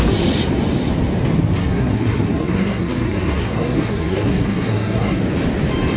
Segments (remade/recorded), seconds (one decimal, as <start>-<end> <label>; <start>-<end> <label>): 0.0-1.6 recorded; 1.6-5.2 remade; 5.2-6.0 recorded